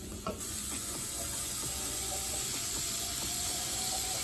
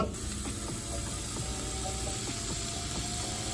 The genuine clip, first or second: second